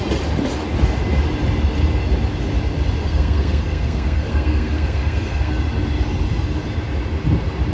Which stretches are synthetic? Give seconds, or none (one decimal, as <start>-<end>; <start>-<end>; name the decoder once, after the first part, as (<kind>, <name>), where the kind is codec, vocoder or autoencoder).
3.0-5.5 (codec, SNAC)